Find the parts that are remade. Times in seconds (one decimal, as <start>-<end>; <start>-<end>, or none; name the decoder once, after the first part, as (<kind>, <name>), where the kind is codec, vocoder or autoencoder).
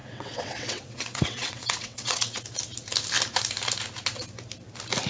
0.0-2.4 (vocoder, WaveNeXt)